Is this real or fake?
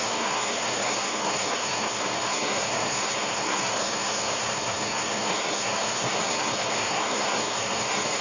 fake